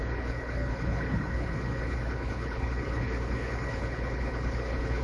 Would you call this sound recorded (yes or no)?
no